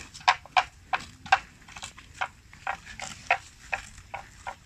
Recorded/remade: recorded